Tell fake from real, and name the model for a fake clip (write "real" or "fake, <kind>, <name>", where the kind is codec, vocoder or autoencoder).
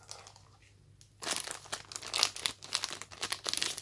real